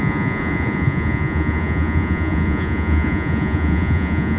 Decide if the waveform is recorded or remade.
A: remade